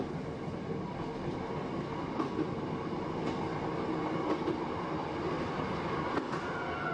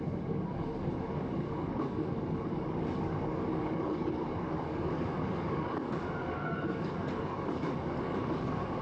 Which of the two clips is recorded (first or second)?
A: first